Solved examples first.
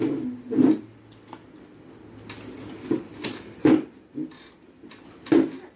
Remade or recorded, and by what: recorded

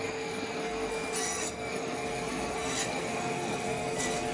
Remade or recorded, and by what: remade, codec, SNAC